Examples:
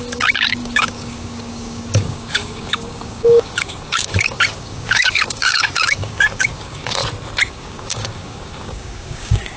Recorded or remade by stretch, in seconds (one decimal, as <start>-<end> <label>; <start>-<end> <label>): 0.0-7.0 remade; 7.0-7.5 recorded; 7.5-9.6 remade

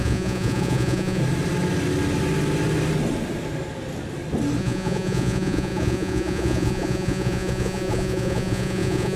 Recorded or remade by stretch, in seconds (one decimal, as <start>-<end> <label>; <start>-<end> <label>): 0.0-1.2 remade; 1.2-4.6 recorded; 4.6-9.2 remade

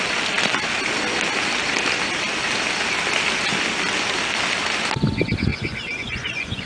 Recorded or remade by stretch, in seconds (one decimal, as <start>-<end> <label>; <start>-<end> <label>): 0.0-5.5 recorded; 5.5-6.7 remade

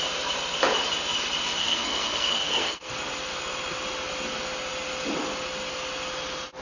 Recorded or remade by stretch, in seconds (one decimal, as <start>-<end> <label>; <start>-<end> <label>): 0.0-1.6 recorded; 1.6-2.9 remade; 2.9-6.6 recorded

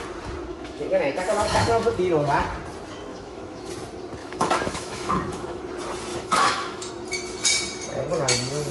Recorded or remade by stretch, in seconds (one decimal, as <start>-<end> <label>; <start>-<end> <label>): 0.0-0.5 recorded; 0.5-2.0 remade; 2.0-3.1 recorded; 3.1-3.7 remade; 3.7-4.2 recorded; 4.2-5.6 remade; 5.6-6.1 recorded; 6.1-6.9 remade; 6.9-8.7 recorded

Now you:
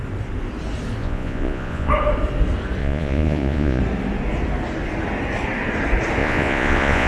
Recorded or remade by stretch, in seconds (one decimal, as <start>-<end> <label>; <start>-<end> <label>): 0.0-1.0 recorded; 1.0-1.9 remade; 1.9-2.8 recorded; 2.8-3.8 remade; 3.8-6.2 recorded; 6.2-7.1 remade

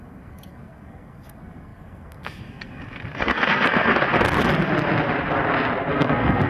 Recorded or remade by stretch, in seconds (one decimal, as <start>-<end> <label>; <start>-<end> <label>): 0.0-3.9 remade; 3.9-5.9 recorded; 5.9-6.5 remade

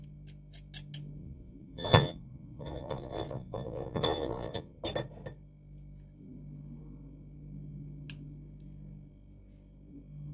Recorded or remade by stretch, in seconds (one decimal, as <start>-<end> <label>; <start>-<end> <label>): 0.0-1.2 recorded; 1.2-4.8 remade; 4.8-10.3 recorded